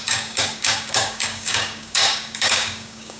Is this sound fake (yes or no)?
yes